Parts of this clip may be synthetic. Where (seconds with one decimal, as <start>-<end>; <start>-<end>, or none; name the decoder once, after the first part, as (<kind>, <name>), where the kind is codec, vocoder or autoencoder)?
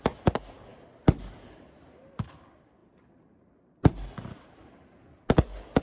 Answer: none